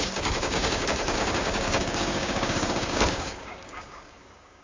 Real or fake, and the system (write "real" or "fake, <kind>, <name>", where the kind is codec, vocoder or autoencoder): fake, codec, DAC